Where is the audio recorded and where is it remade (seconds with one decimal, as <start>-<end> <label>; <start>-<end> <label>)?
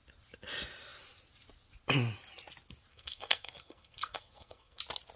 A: 0.0-2.9 recorded; 2.9-4.8 remade; 4.8-5.2 recorded